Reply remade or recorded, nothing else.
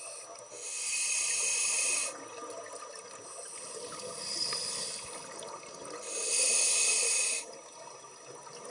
recorded